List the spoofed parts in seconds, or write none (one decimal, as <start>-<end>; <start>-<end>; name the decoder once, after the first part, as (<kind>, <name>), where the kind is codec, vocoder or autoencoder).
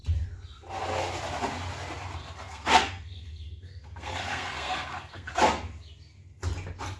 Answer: 2.2-5.3 (codec, SNAC)